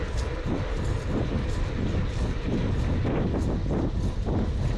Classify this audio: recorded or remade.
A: recorded